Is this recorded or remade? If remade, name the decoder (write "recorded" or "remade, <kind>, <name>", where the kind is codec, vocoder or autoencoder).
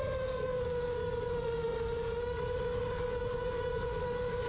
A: remade, codec, DAC